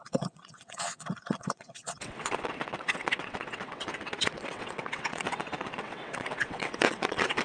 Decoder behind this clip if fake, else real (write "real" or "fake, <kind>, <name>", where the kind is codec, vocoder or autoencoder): fake, vocoder, WaveNeXt